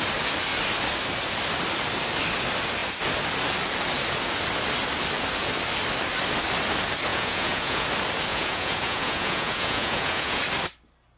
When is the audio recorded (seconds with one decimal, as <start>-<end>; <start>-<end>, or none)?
0.0-7.1; 7.9-8.3; 10.4-11.2